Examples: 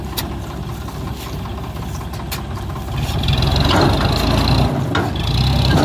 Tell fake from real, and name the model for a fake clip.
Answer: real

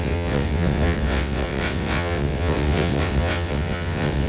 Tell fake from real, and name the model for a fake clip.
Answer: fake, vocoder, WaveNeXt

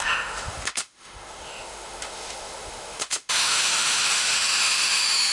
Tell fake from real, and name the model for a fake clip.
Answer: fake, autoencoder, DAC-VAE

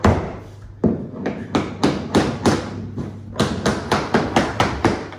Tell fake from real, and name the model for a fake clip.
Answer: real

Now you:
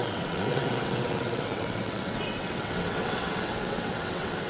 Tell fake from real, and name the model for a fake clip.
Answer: fake, vocoder, WaveNeXt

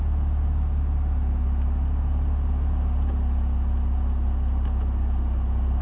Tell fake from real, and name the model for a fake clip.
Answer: real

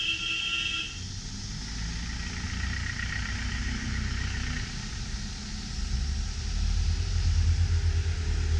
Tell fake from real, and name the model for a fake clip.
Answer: real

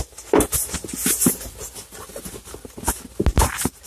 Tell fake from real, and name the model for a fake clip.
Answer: real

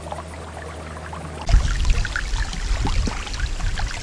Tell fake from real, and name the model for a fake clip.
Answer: real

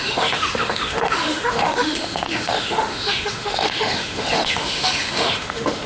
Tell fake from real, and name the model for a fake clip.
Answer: fake, autoencoder, DAC-VAE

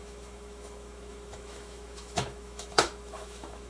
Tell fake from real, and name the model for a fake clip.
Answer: fake, autoencoder, DAC-VAE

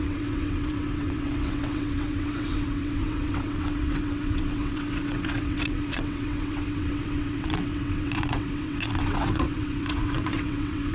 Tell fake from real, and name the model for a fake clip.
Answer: fake, vocoder, WaveNeXt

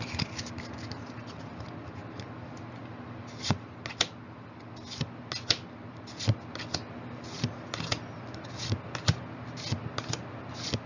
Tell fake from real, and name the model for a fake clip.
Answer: real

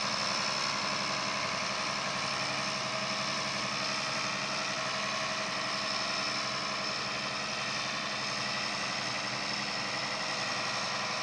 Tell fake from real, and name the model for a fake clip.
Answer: real